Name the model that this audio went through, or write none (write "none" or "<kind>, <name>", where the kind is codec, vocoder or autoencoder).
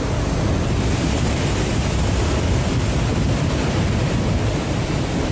none